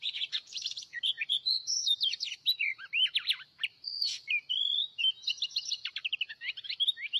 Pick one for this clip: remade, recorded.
remade